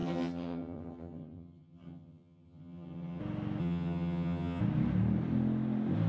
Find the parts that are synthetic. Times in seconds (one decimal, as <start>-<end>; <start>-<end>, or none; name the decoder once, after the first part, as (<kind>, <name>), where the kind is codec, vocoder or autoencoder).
0.0-3.2 (vocoder, HiFi-GAN); 3.6-4.6